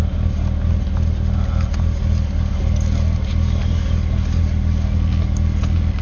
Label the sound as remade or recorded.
recorded